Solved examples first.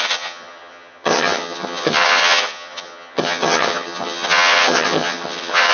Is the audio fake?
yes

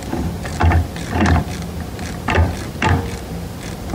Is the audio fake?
no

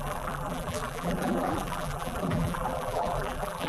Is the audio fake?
yes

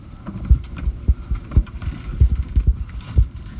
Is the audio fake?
yes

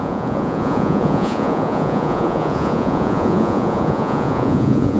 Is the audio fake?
yes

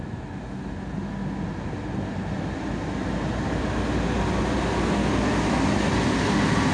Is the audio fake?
no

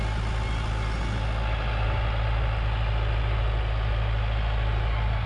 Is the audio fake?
no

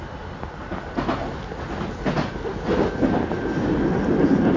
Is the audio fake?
no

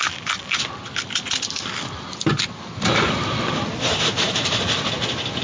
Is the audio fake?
no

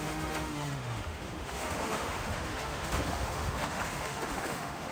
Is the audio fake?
yes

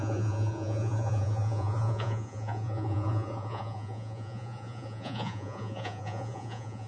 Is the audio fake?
yes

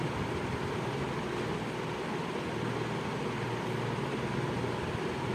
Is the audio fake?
no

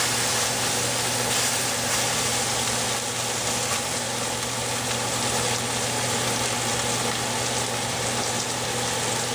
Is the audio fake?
no